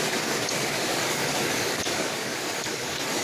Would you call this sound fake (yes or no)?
yes